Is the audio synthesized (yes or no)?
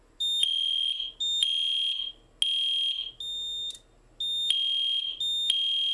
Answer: no